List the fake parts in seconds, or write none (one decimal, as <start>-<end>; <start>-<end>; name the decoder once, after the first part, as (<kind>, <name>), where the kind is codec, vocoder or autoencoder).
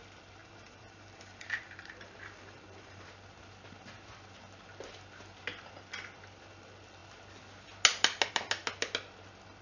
0.4-3.1 (vocoder, BigVGAN v2)